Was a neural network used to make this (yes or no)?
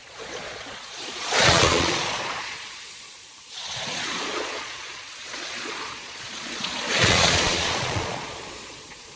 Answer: yes